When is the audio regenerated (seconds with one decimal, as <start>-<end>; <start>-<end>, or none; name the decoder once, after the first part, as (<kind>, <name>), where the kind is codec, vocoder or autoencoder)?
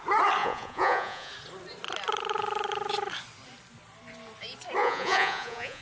0.4-1.3 (vocoder, Vocos); 4.8-5.8